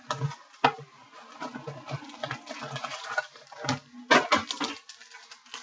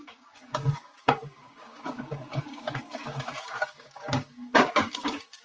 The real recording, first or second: first